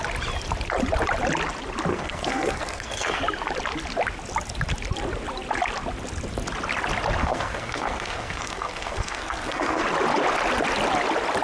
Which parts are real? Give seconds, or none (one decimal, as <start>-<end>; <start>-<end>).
0.0-1.9; 3.2-7.2; 9.8-11.4